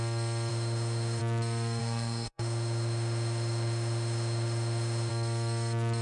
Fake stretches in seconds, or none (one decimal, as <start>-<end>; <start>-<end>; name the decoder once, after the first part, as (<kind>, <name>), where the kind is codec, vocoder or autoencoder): 0.5-1.2 (autoencoder, DAC-VAE); 1.8-5.1